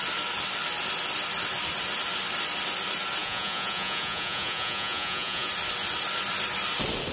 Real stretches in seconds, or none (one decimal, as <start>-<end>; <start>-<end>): 0.0-3.2; 5.5-7.1